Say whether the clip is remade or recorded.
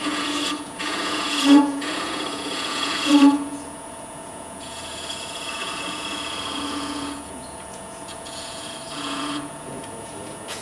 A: remade